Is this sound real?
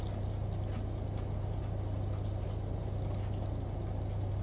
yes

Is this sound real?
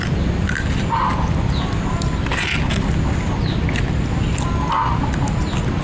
yes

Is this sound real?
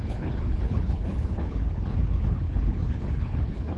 no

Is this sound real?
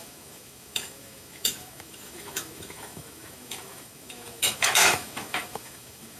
no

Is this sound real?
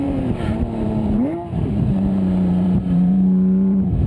no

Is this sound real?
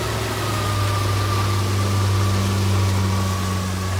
yes